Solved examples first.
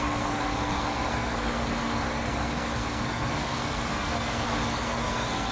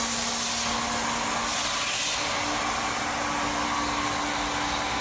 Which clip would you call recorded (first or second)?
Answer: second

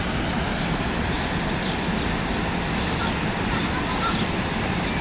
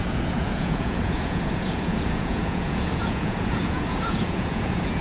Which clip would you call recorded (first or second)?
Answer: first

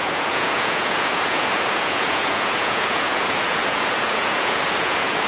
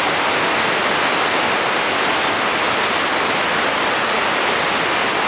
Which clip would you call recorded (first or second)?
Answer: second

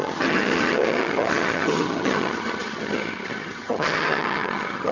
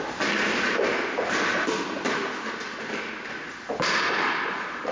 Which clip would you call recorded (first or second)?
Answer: second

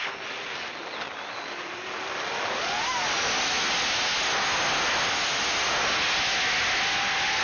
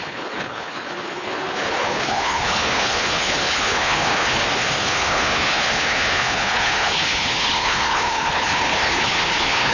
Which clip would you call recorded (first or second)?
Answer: first